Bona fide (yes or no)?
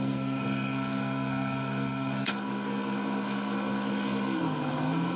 no